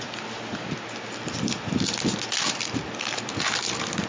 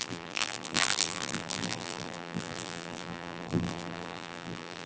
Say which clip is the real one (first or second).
first